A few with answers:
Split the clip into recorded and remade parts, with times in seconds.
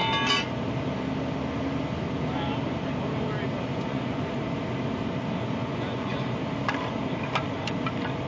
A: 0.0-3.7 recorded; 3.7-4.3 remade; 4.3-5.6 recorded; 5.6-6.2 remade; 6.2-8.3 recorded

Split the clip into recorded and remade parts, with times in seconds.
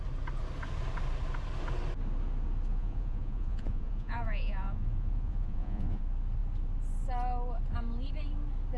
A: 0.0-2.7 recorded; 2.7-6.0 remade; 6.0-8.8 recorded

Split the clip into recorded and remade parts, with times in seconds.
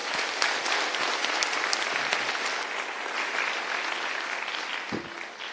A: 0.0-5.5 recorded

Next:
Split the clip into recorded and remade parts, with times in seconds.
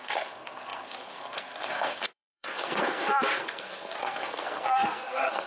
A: 0.0-5.5 remade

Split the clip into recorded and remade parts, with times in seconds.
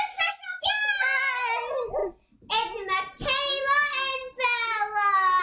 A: 0.0-5.4 recorded